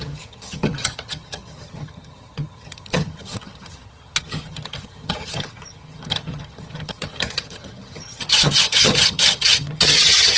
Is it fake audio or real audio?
fake